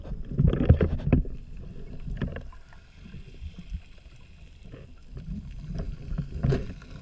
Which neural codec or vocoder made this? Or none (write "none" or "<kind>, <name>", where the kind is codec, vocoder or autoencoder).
none